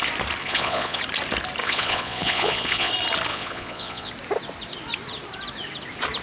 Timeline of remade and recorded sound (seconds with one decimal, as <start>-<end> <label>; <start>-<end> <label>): 0.0-0.4 recorded; 0.4-1.0 remade; 1.0-1.6 recorded; 1.6-2.9 remade; 2.9-3.3 recorded; 3.3-4.1 remade; 4.1-6.2 recorded